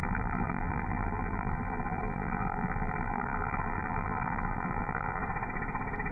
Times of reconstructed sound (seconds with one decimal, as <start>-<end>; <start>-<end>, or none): 0.0-5.2